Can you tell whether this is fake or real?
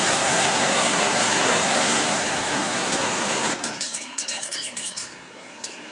fake